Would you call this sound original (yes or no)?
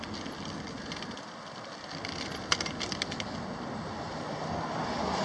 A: yes